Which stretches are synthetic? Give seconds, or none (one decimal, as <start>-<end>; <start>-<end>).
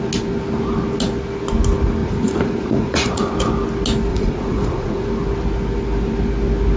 2.0-3.3; 4.1-5.1